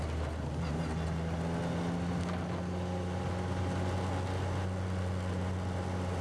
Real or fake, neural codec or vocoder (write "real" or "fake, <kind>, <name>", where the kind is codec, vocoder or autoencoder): real